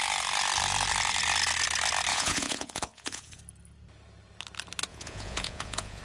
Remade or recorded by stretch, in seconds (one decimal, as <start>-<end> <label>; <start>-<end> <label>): 0.0-2.1 recorded; 2.1-3.4 remade; 3.4-4.9 recorded; 4.9-6.0 remade